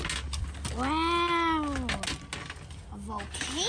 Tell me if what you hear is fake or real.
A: real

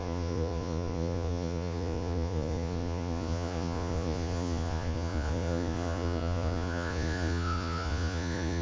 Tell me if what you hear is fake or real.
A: fake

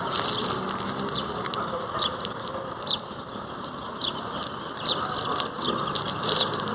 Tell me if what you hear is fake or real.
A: real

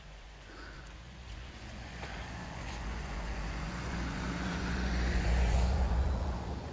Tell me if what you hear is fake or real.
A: fake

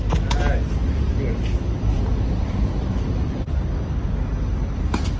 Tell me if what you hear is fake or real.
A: real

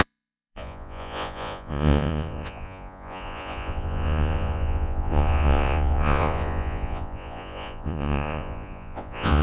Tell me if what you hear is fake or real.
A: fake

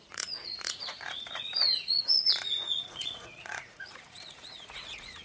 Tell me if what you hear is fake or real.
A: fake